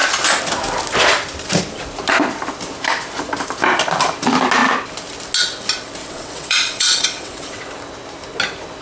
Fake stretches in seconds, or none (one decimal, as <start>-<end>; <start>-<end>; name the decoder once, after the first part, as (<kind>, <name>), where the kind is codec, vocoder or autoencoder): 6.0-7.8 (vocoder, WaveNeXt)